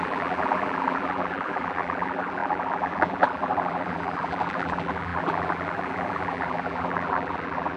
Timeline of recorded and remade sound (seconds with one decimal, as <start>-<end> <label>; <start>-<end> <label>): 0.0-7.8 remade